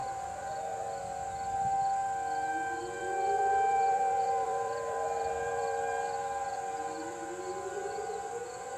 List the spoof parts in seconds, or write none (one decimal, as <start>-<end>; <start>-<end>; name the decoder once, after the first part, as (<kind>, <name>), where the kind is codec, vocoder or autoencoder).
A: 0.0-1.0 (vocoder, BigVGAN v2); 2.8-7.8